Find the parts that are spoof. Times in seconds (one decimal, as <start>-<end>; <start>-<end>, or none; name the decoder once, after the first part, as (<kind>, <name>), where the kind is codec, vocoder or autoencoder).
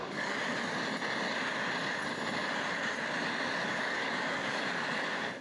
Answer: 0.0-0.4 (codec, DAC); 3.6-5.4